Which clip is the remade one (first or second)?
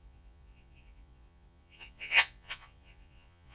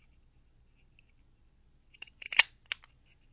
first